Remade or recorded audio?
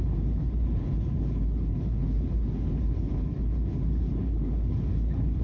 remade